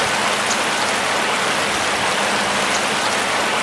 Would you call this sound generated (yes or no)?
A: no